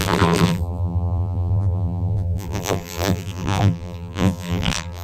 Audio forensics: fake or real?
fake